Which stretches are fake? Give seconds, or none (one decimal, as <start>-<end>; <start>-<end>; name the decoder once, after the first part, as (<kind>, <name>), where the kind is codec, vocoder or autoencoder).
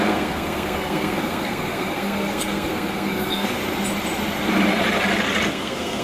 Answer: 0.0-3.6 (codec, SNAC); 5.5-6.0